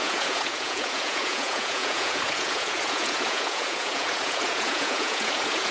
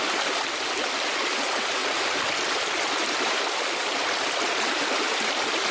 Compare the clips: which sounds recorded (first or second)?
second